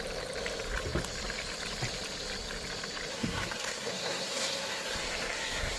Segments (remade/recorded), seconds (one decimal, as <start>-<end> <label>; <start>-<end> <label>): 0.0-3.1 recorded; 3.1-5.8 remade